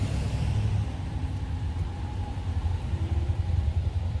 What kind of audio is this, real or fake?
fake